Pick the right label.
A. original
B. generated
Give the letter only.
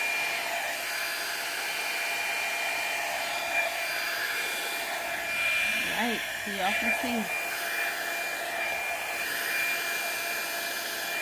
A